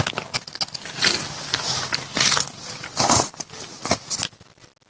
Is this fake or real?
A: real